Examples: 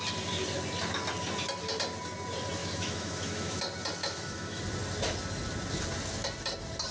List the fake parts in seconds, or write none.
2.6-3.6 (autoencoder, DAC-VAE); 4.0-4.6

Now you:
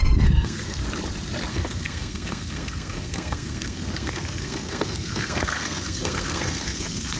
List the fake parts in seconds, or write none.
0.0-0.8 (codec, SNAC); 1.5-7.2

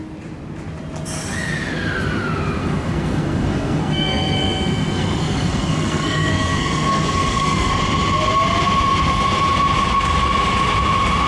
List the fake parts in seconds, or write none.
2.6-7.8 (codec, SNAC)

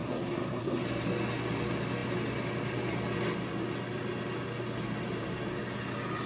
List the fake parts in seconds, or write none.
0.0-0.8 (codec, SNAC)